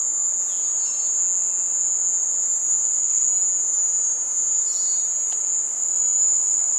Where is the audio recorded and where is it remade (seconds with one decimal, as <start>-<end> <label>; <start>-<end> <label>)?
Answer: 0.0-2.8 recorded; 2.8-3.3 remade; 3.3-6.8 recorded